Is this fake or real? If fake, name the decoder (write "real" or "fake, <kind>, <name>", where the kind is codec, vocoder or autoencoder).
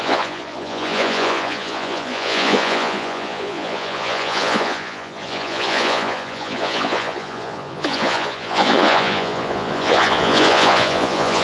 fake, vocoder, Vocos